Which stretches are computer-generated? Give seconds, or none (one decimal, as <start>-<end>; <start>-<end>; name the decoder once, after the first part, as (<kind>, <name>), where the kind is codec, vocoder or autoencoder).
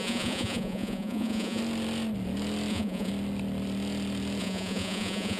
0.0-1.6 (vocoder, Vocos); 2.7-3.1; 4.4-5.4